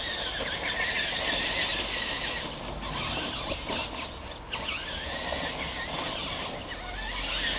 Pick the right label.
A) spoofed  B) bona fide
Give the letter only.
B